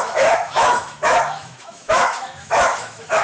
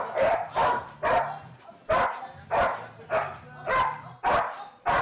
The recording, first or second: second